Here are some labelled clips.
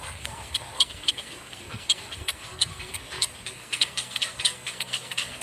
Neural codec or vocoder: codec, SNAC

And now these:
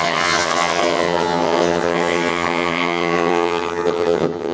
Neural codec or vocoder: vocoder, HiFi-GAN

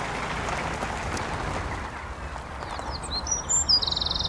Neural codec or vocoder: none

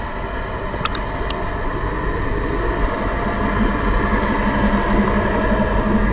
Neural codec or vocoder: none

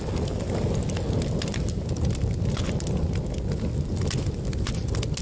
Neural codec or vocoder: none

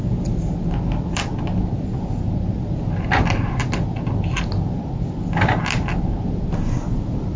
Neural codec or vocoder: none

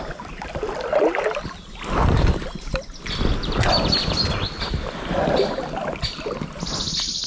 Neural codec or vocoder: none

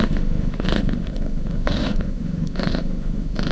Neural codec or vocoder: autoencoder, DAC-VAE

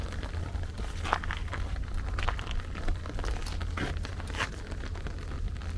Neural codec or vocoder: none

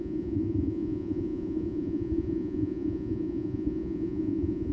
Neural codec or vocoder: vocoder, Vocos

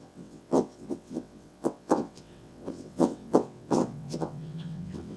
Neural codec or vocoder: vocoder, WaveNeXt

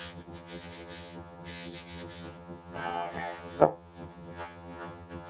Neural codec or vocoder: vocoder, HiFi-GAN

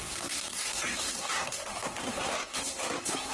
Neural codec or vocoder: codec, SNAC